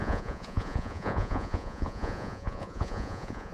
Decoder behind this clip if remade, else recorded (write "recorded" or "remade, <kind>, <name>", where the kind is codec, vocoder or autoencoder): remade, vocoder, Vocos